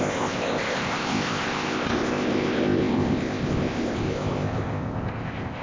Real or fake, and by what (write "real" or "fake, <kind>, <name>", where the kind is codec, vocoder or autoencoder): fake, codec, ZipCodec